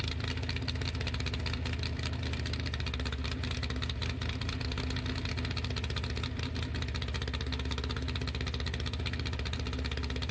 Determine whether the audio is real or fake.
real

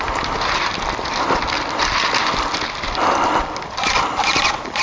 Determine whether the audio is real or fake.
real